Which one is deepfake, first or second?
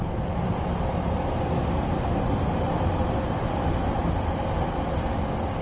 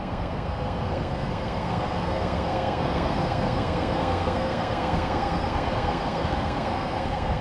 second